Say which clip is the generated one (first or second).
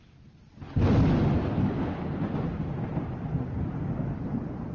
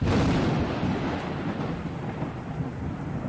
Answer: second